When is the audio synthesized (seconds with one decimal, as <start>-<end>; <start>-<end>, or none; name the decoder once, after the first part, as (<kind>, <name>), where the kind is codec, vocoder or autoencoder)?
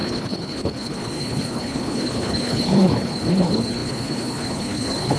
0.0-5.2 (codec, HILCodec)